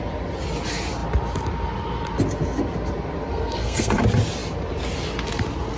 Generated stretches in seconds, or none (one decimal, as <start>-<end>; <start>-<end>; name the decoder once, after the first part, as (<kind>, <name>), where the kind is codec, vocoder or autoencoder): 3.3-3.9 (codec, SNAC)